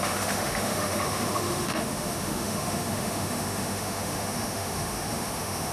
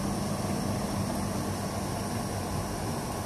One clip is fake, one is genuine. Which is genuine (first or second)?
second